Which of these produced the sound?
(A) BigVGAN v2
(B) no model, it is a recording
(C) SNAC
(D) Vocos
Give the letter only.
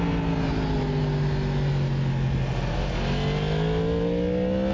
B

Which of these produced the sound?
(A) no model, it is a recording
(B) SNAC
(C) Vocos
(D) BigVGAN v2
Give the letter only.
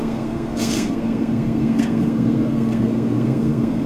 B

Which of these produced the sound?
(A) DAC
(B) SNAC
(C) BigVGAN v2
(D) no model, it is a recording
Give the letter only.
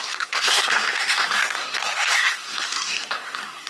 B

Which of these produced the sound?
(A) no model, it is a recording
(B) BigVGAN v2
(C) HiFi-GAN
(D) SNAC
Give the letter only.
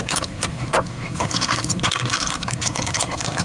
D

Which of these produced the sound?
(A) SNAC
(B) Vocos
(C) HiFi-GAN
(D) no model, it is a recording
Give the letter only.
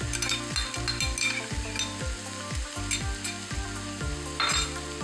D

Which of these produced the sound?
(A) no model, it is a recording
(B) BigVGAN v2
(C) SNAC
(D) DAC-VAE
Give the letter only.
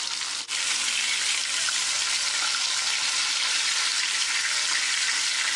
A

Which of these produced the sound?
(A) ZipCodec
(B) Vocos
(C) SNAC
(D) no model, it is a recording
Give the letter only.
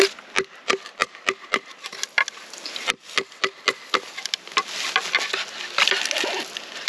D